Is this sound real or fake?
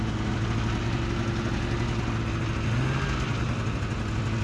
real